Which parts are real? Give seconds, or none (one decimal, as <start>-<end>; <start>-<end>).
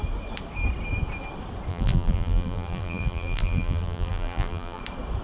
0.0-1.7; 4.8-5.2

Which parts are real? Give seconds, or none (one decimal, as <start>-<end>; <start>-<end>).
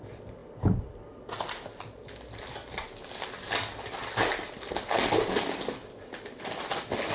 0.0-7.1